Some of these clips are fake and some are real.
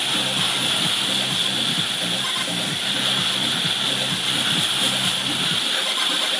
real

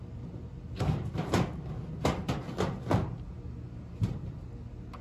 real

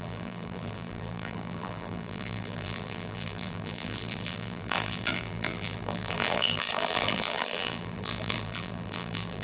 fake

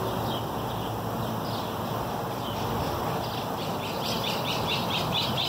real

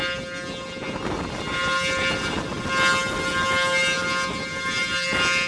real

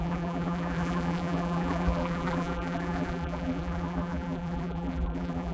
fake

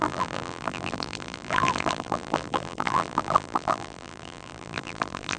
fake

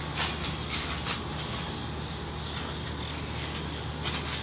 real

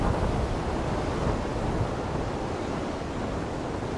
real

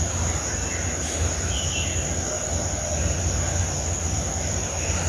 real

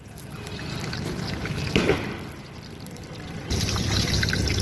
real